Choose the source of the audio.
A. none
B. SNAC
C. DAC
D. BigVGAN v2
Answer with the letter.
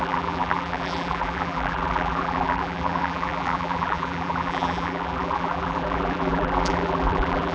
D